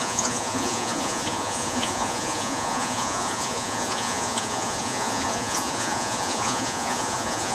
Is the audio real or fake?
fake